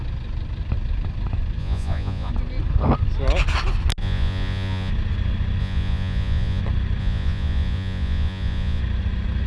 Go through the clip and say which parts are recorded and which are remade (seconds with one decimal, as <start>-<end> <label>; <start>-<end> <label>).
0.0-1.6 recorded; 1.6-2.3 remade; 2.3-4.0 recorded; 4.0-4.9 remade; 4.9-5.6 recorded; 5.6-6.6 remade; 6.6-7.0 recorded; 7.0-8.8 remade; 8.8-9.5 recorded